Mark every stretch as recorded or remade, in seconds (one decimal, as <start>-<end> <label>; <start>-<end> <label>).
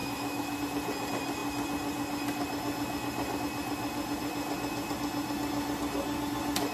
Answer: 0.0-0.6 remade; 0.6-6.7 recorded